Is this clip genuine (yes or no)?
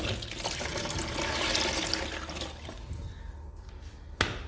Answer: yes